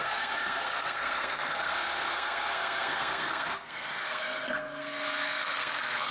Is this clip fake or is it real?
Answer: fake